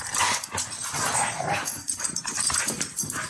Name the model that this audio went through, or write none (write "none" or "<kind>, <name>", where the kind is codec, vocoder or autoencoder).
vocoder, BigVGAN v2